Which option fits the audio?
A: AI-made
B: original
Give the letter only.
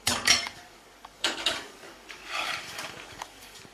A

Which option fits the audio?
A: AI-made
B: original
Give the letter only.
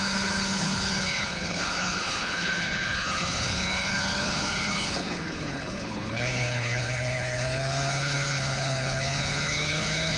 A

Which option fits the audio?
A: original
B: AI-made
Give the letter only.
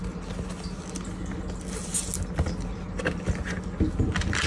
A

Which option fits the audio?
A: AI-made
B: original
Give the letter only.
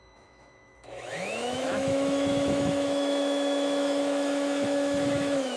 A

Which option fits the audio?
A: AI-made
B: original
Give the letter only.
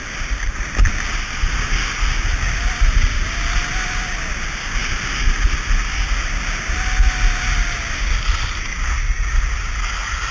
B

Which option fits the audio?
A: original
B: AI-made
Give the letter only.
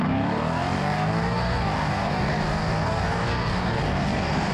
B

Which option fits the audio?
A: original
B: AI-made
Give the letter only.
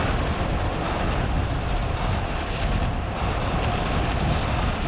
A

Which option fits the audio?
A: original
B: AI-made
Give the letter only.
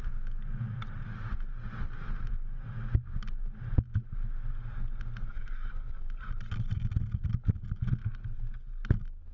A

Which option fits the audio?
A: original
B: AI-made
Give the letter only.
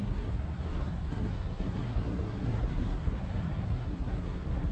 B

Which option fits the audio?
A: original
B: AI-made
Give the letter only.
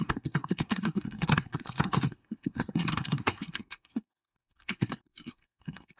B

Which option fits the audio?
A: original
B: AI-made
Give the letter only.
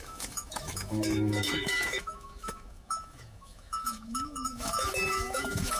B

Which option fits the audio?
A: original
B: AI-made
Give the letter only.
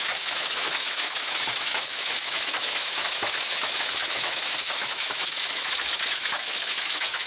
B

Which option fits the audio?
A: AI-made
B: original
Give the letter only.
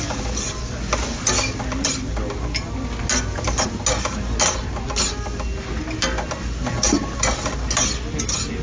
B